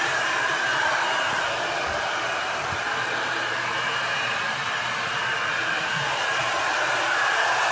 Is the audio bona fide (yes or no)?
no